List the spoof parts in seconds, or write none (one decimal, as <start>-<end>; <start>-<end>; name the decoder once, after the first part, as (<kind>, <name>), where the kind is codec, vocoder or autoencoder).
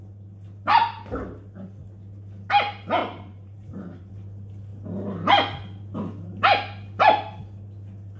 3.0-4.1 (vocoder, BigVGAN v2)